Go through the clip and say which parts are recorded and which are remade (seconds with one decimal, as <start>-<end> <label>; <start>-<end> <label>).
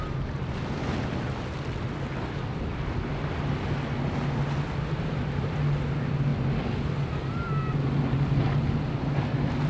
0.0-9.7 recorded